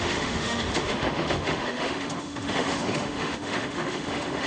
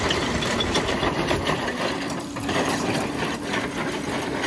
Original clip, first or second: second